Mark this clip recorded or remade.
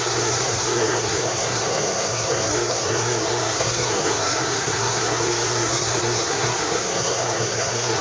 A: remade